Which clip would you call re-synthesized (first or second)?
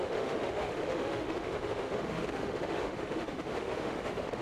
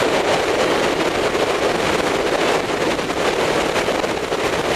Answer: first